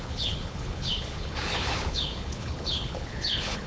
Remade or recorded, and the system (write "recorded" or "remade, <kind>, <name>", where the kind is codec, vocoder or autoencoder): remade, codec, HILCodec